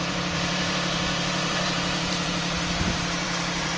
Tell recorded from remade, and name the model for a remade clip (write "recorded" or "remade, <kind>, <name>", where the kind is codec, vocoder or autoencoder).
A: remade, vocoder, BigVGAN v2